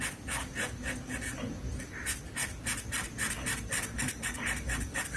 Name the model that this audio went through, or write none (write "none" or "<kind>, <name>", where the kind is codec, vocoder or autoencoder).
none